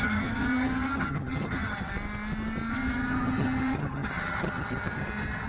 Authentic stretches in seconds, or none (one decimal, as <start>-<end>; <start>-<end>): 1.9-2.7